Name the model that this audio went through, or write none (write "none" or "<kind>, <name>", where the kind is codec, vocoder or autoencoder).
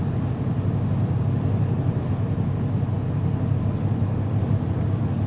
none